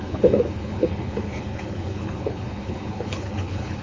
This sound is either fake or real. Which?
fake